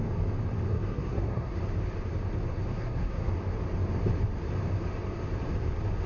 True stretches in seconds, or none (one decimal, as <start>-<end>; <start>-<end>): 0.0-0.7; 1.6-2.7; 3.3-6.1